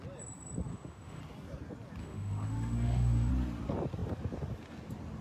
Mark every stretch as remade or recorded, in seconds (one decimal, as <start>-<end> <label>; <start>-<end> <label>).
0.0-0.7 recorded; 0.7-1.2 remade; 1.2-2.0 recorded; 2.0-3.3 remade; 3.3-5.2 recorded